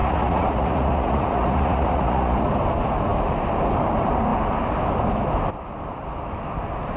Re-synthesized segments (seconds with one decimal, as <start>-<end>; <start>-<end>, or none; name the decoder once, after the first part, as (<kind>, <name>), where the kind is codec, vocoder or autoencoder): 0.0-2.5 (vocoder, Vocos)